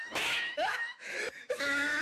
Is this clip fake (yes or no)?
yes